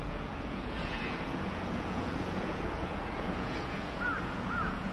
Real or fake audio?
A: fake